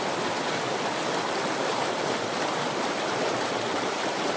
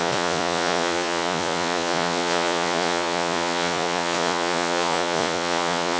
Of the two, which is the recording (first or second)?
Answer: first